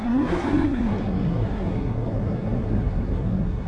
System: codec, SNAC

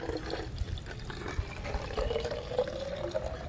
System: none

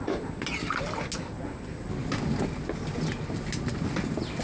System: none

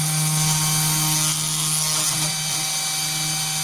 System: none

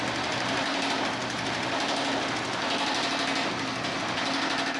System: none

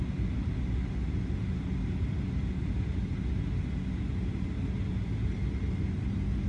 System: none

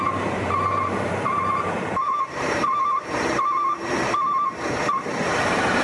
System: vocoder, BigVGAN v2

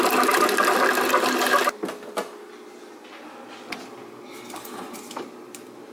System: none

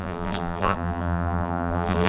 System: vocoder, BigVGAN v2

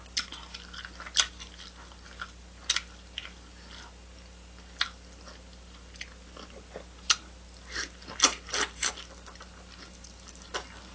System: none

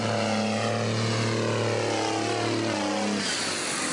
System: none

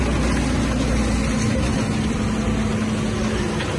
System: none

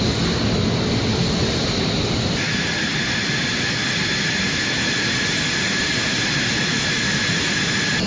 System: none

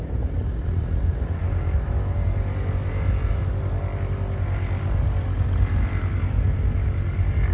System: none